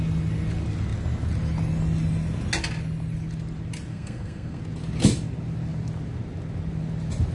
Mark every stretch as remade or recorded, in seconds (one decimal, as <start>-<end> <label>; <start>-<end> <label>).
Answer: 0.0-3.9 recorded; 3.9-4.6 remade; 4.6-7.3 recorded